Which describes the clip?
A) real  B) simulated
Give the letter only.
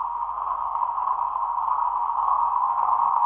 B